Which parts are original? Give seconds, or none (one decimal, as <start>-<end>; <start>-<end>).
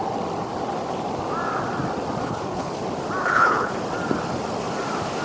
0.0-2.2; 2.7-3.2; 3.7-5.2